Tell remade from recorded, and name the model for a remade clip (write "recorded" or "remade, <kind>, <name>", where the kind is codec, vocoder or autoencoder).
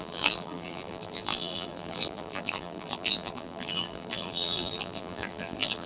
remade, vocoder, BigVGAN v2